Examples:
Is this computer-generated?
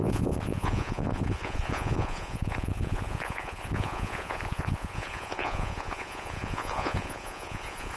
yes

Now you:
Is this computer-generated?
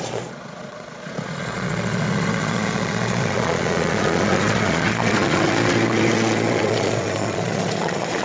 yes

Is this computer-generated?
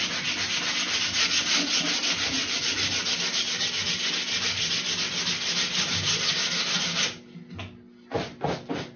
no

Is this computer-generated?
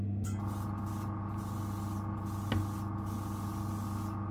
no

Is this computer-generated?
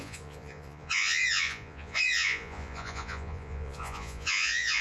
yes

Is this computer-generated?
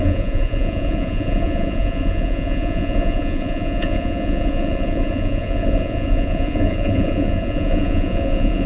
yes